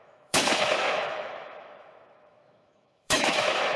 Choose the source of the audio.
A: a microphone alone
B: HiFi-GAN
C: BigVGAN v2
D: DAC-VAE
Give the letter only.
D